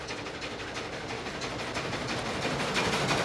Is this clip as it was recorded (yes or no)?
yes